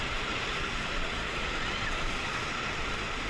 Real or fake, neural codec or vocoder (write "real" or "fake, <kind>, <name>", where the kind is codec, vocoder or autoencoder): fake, vocoder, Vocos